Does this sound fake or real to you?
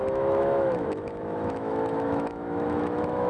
fake